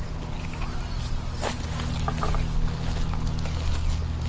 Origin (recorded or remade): recorded